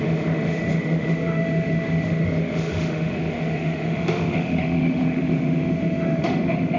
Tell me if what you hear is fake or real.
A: fake